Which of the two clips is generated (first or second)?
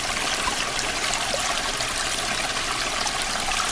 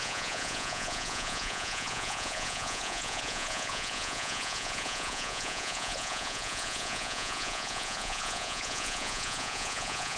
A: second